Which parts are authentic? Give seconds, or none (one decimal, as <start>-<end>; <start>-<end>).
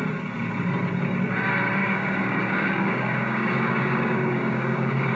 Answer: 0.0-1.8